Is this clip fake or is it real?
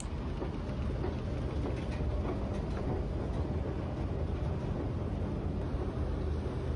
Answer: real